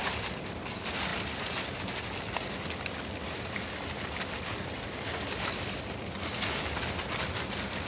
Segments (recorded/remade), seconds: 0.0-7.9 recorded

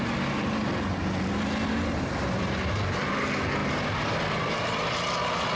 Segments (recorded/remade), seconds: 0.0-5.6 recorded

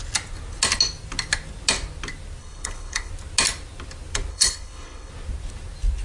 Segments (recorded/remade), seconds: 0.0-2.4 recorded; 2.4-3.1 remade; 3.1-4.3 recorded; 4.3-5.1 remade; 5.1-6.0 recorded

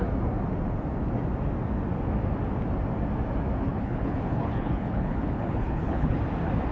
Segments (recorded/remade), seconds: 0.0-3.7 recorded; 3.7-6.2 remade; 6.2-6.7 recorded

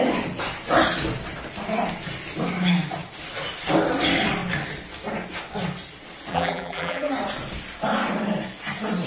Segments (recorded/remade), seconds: 0.0-6.3 recorded; 6.3-7.1 remade; 7.1-9.1 recorded